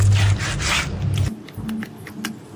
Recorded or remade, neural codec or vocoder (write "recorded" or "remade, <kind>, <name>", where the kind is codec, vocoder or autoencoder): recorded